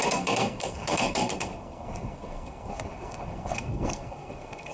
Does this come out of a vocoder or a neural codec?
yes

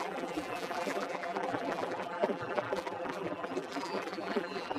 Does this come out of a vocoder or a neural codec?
yes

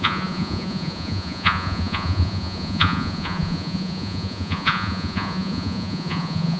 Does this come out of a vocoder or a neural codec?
yes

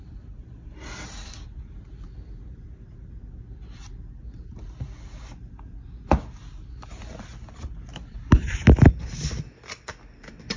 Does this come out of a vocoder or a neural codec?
no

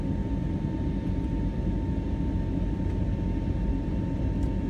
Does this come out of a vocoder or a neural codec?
no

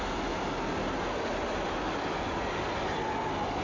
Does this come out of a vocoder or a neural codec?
no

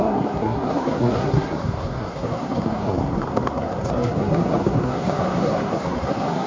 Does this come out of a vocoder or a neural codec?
yes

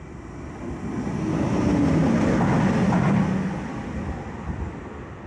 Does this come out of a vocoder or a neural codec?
no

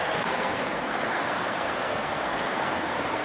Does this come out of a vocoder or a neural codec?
yes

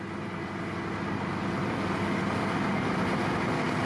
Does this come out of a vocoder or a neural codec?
no